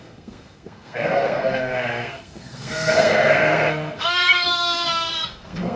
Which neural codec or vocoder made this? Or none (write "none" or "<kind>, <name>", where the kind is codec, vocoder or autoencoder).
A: codec, SNAC